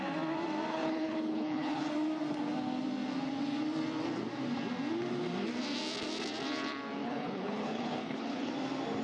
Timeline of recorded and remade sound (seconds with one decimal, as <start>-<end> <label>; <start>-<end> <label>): 0.0-0.7 recorded; 0.7-1.9 remade; 1.9-7.0 recorded; 7.0-8.5 remade; 8.5-9.0 recorded